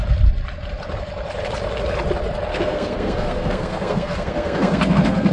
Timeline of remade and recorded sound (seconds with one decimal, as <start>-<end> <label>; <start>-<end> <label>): 0.0-2.5 recorded; 2.5-5.3 remade